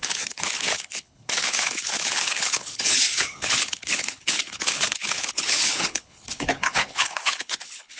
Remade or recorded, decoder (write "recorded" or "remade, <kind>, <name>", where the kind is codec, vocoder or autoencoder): remade, codec, HILCodec